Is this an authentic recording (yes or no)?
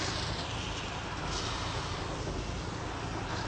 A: yes